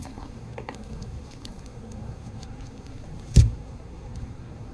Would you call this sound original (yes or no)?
no